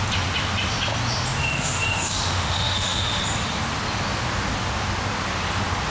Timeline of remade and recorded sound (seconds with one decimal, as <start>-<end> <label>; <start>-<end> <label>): 0.0-1.4 recorded; 1.4-3.2 remade; 3.2-5.9 recorded